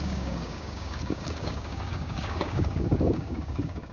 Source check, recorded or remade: remade